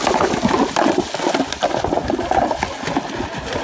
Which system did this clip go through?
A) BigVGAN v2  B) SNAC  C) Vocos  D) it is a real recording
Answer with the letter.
D